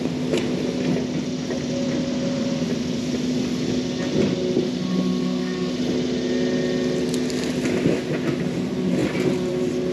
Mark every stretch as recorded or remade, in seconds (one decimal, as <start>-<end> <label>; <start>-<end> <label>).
0.0-5.2 recorded; 5.2-5.7 remade; 5.7-9.9 recorded

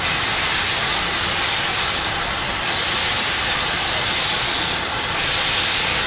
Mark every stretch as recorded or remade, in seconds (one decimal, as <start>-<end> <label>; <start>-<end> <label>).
0.0-1.7 recorded; 1.7-5.4 remade; 5.4-6.1 recorded

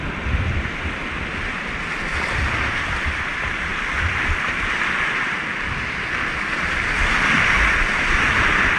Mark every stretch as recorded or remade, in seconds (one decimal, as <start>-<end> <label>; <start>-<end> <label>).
0.0-8.8 recorded

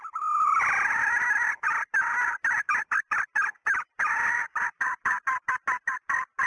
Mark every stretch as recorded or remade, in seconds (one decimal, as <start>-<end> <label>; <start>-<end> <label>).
0.0-6.5 recorded

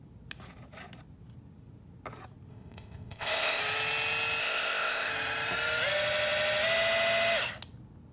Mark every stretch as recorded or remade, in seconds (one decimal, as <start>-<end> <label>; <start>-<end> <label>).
0.0-2.5 recorded; 2.5-3.6 remade; 3.6-4.4 recorded; 4.4-5.1 remade; 5.1-8.1 recorded